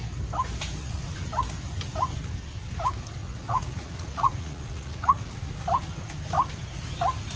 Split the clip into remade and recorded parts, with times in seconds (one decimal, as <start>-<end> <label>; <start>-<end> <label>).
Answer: 0.0-0.8 recorded; 0.8-1.4 remade; 1.4-3.2 recorded; 3.2-5.5 remade; 5.5-7.4 recorded